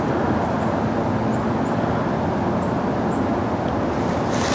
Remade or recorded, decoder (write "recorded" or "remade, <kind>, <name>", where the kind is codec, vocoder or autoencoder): recorded